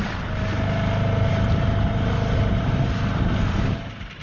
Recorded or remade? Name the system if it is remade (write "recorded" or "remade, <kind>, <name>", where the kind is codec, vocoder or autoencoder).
recorded